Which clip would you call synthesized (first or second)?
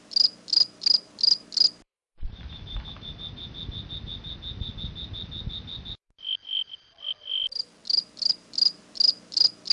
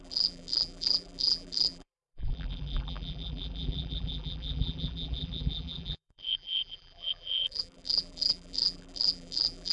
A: second